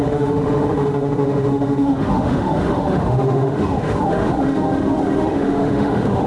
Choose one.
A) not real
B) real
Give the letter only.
A